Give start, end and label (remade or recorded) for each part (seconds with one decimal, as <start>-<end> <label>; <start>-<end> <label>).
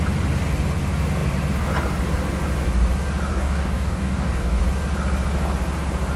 0.0-3.3 recorded; 3.3-4.6 remade; 4.6-6.2 recorded